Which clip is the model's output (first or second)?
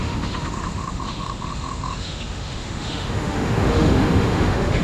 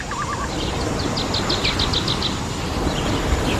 first